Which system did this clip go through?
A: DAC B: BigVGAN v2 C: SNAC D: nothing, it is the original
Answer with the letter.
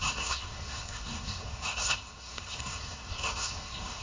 C